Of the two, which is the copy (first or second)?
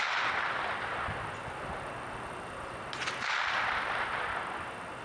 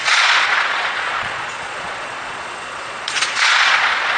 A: second